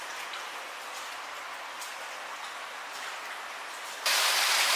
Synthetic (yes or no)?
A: no